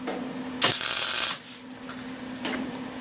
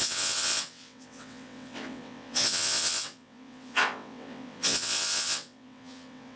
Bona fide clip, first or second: first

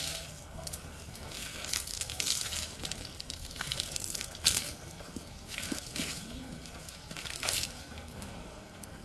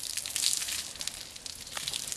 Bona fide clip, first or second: second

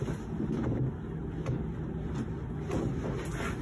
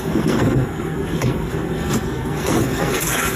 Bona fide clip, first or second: first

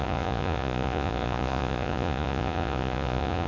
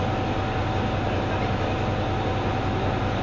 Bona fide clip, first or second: second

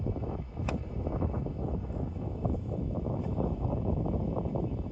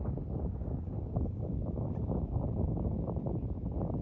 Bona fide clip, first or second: second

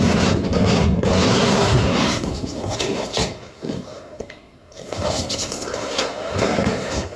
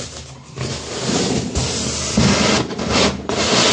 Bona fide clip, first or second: second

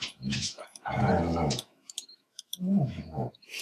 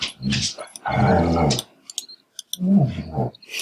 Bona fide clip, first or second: second